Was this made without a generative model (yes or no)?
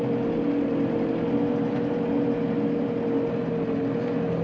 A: yes